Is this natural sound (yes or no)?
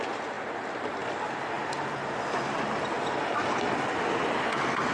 yes